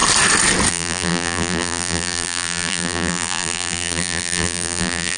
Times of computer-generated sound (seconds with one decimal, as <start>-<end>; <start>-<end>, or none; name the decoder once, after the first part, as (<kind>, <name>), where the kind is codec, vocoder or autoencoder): 0.7-5.2 (vocoder, BigVGAN v2)